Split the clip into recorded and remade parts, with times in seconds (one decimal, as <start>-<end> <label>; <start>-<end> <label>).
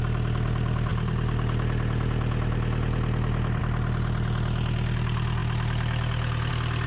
0.0-6.9 recorded